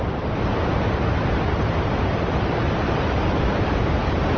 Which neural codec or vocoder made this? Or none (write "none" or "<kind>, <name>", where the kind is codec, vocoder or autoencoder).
vocoder, BigVGAN v2